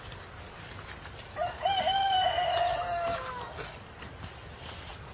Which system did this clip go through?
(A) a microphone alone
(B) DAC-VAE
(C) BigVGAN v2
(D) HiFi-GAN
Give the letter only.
A